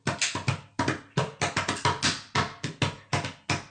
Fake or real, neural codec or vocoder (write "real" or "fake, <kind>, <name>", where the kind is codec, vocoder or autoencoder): real